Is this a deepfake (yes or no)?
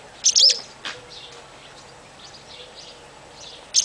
no